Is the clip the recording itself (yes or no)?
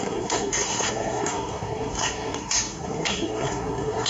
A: no